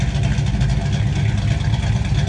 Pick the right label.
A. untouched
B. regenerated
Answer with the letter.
A